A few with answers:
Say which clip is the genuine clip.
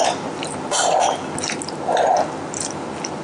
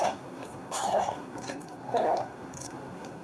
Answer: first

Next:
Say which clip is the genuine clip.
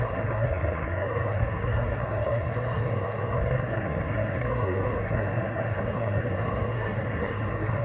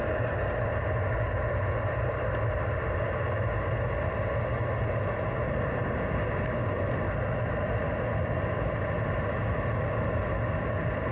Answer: second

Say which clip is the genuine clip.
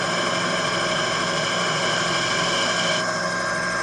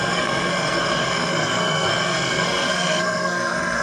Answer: first